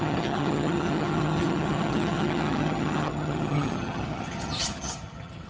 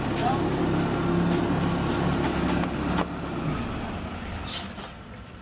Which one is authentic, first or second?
second